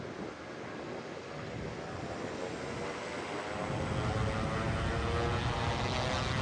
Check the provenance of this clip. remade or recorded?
recorded